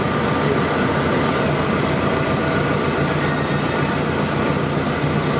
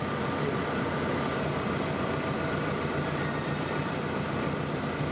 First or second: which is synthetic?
second